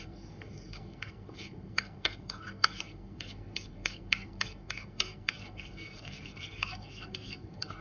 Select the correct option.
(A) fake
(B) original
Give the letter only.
A